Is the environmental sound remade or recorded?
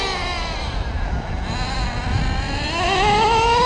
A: recorded